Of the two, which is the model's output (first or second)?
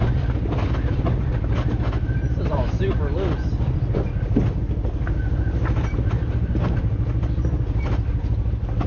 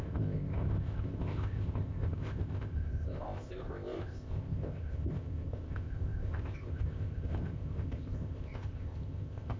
second